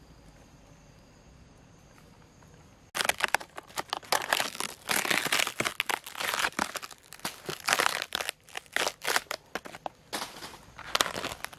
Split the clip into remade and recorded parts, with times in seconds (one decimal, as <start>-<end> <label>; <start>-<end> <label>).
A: 0.0-11.6 recorded